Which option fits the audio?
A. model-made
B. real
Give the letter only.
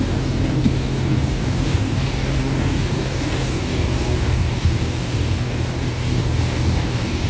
A